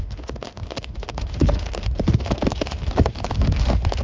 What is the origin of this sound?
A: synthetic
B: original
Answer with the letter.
A